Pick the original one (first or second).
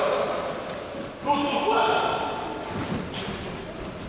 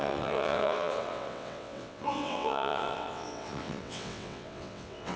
first